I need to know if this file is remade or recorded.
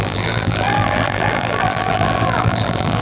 remade